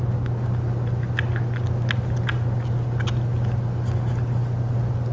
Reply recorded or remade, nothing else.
recorded